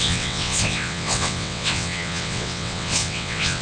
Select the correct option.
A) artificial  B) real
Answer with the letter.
A